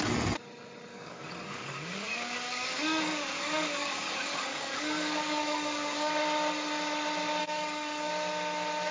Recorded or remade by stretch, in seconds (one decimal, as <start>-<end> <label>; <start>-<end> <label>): 0.0-0.9 recorded; 0.9-6.1 remade; 6.1-7.4 recorded; 7.4-8.1 remade; 8.1-8.9 recorded